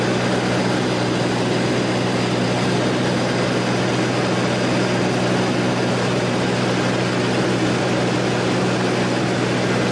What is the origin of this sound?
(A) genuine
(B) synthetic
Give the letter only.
A